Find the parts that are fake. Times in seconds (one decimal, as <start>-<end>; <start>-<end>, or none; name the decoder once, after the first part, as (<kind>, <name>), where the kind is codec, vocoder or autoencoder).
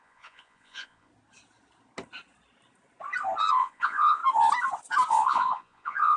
0.0-1.1 (vocoder, Vocos); 3.5-4.2; 5.1-6.2